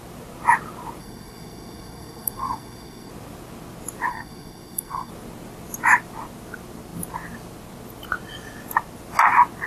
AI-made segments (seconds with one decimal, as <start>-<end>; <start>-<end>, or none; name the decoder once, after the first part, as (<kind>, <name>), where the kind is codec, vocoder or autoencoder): 1.0-3.1 (codec, SNAC); 4.1-5.1